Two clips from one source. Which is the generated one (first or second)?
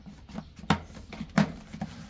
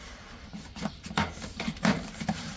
second